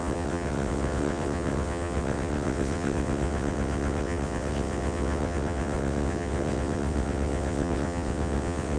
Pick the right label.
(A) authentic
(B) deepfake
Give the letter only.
B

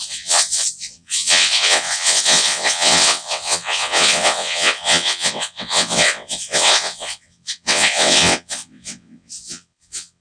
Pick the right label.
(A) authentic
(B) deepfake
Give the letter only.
B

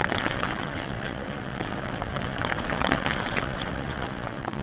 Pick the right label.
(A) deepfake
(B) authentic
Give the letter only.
A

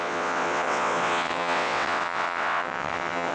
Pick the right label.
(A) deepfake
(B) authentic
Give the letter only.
A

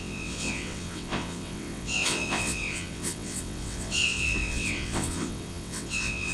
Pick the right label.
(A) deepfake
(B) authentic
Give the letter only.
A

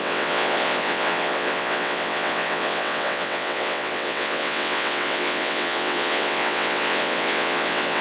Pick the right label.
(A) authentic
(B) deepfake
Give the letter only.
B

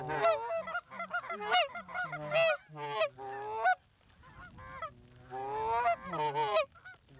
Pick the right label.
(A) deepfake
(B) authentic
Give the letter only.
B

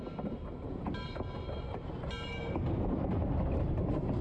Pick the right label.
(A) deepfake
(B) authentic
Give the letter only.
B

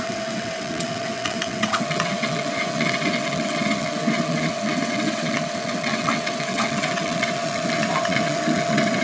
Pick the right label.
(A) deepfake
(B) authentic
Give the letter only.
A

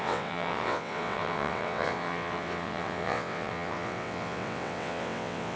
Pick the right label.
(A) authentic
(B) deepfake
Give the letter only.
B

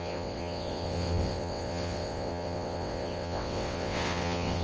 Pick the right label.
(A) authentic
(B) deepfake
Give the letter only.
B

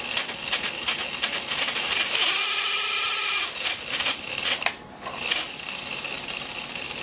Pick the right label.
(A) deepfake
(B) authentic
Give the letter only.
B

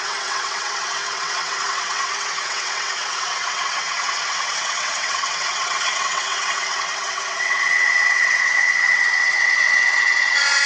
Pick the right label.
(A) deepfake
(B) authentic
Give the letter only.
A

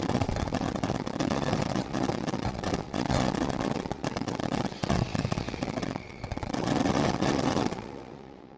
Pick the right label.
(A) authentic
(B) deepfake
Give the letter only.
B